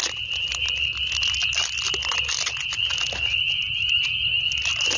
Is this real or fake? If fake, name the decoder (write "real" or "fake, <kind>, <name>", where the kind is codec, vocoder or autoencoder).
real